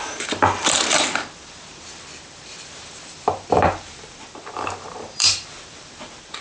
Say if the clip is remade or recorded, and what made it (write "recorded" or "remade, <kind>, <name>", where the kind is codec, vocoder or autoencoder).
remade, vocoder, BigVGAN v2